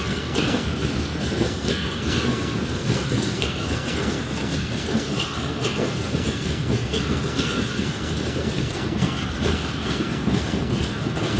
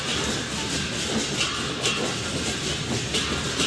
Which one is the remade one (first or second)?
first